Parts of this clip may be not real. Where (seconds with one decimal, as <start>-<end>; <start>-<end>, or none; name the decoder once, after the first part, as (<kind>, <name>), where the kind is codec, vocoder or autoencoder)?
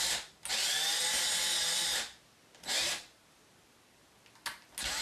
none